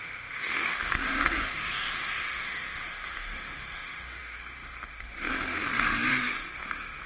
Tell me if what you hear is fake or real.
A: fake